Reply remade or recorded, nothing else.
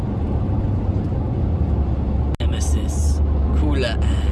recorded